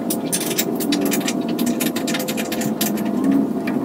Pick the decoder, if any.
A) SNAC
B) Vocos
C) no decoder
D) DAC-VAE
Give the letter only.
C